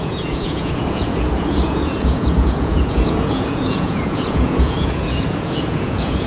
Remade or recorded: remade